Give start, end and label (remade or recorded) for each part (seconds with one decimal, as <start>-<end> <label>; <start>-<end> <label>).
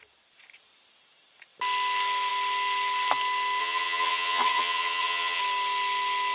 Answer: 0.0-3.6 recorded; 3.6-5.4 remade; 5.4-6.3 recorded